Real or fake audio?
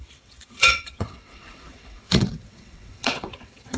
fake